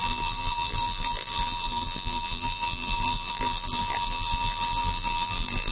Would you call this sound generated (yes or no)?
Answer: yes